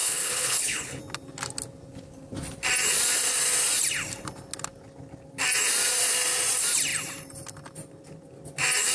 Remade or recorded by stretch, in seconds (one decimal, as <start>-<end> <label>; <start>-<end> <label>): 0.0-1.0 remade; 1.0-8.9 recorded